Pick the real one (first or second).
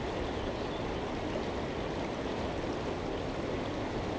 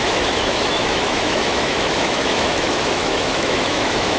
first